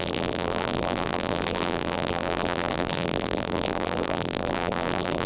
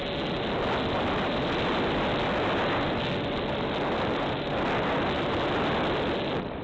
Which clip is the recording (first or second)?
second